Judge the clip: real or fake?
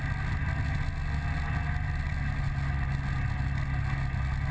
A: real